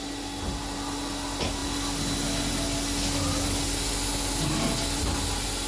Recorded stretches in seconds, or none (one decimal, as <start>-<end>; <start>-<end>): 0.0-5.7